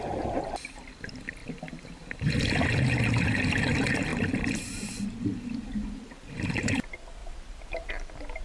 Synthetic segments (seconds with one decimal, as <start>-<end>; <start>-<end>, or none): 1.4-2.8; 7.2-7.9